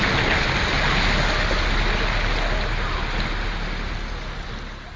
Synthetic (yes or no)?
no